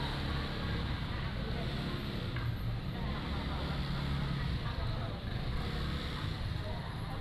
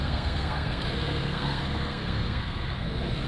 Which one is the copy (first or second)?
second